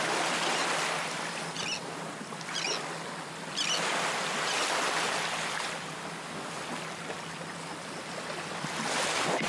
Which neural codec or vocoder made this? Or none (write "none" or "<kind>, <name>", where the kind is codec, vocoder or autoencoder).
none